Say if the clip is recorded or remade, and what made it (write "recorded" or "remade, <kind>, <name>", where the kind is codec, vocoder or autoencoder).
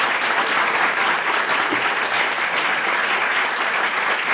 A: recorded